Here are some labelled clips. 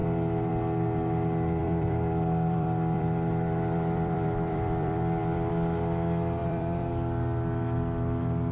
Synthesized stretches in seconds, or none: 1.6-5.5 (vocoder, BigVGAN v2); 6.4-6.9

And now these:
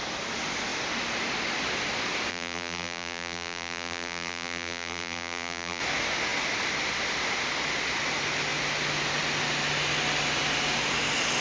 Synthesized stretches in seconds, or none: 2.3-5.8 (vocoder, BigVGAN v2)

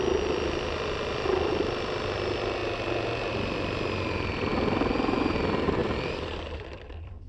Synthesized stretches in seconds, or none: 5.8-7.3 (vocoder, BigVGAN v2)